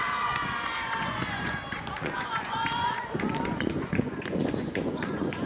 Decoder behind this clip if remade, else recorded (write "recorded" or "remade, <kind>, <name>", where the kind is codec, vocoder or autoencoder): remade, vocoder, Vocos